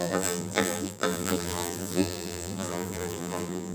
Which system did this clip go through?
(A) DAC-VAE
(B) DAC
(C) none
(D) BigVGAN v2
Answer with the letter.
D